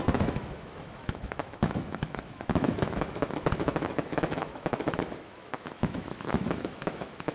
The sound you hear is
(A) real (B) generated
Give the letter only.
B